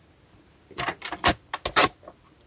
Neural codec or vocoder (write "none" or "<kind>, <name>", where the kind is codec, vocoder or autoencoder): none